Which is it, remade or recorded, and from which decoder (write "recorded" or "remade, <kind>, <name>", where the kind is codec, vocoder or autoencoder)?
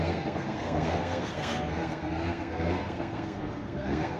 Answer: remade, codec, SNAC